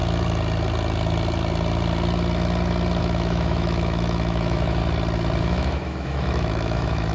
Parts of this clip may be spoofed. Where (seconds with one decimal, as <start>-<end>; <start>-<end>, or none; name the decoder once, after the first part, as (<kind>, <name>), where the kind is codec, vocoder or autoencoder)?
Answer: 3.0-4.8 (autoencoder, DAC-VAE); 5.4-7.1